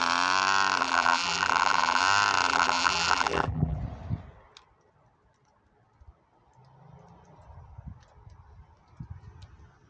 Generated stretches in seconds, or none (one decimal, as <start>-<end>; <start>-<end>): 0.8-2.0; 2.5-3.8

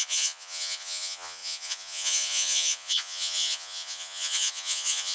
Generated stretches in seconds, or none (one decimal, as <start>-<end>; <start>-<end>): 0.0-5.1

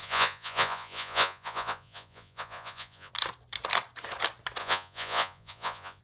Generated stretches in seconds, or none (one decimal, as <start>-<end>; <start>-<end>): 0.0-3.1; 4.6-6.0

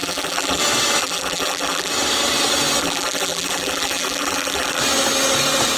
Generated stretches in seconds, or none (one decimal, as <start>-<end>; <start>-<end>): 0.0-0.6; 1.0-1.9; 2.8-4.8

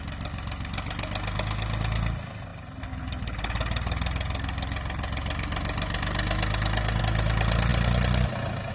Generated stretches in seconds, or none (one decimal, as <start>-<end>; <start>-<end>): none

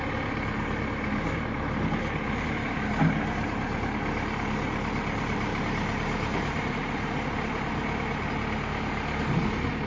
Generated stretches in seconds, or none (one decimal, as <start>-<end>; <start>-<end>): 5.5-8.3